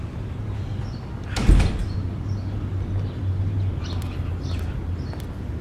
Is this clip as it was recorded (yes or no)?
yes